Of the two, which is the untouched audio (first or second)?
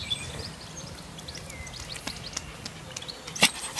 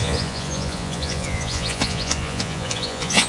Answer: first